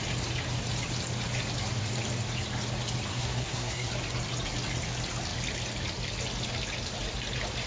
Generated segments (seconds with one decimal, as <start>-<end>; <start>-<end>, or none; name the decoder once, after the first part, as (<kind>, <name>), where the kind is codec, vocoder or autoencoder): 3.1-3.9 (codec, SNAC)